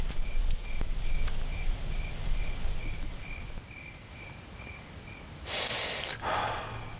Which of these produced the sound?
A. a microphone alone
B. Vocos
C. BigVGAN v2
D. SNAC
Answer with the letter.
A